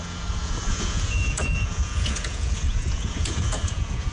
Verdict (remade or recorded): remade